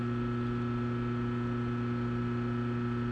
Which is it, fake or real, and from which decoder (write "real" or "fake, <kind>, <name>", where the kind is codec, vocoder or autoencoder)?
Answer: real